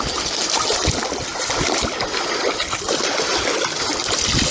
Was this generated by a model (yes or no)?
no